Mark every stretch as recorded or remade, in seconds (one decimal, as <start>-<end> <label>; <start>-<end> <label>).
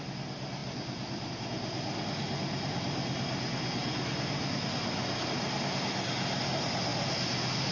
0.0-7.7 recorded